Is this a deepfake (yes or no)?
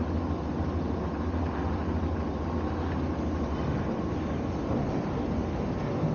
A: no